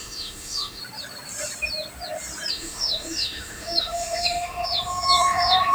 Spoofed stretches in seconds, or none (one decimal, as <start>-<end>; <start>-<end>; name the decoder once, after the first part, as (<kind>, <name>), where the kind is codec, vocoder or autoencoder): 0.0-0.8 (autoencoder, DAC-VAE); 2.5-5.7